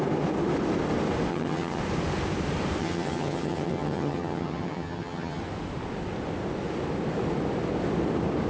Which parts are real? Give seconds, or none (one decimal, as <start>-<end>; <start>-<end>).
0.0-1.3; 1.8-2.8; 5.4-8.5